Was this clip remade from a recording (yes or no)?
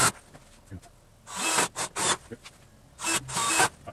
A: no